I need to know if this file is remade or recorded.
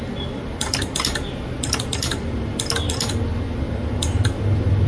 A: recorded